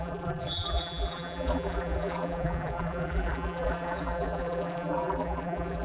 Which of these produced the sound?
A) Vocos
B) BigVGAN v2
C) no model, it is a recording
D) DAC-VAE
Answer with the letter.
B